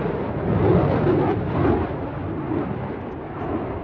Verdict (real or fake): real